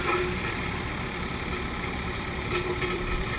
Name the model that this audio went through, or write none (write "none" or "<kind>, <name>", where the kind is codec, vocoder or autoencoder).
vocoder, BigVGAN v2